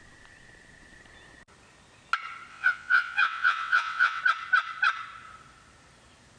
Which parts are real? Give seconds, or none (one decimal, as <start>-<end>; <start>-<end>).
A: 0.0-2.5; 4.2-6.4